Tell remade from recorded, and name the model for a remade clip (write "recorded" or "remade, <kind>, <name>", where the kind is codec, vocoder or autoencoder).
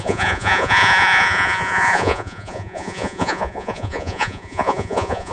remade, vocoder, Vocos